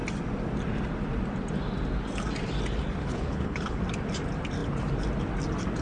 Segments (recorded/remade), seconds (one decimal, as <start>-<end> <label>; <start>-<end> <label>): 0.0-3.0 recorded; 3.0-3.8 remade; 3.8-5.8 recorded